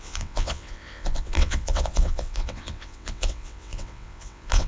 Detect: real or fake fake